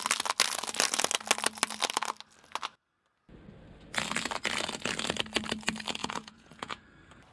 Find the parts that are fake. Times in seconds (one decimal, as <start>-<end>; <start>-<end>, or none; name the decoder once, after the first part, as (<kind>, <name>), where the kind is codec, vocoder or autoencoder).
6.0-6.8 (vocoder, Vocos)